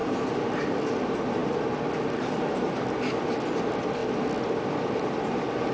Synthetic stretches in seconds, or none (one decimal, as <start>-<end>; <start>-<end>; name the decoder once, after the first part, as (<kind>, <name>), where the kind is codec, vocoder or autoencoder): 0.7-4.0 (vocoder, BigVGAN v2); 5.3-5.7